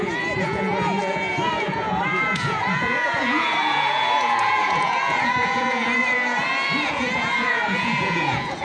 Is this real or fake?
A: fake